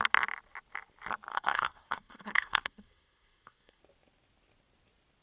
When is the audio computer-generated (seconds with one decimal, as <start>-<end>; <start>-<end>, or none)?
1.3-3.8